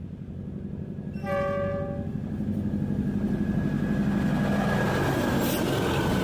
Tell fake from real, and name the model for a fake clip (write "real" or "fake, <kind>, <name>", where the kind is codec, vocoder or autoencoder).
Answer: real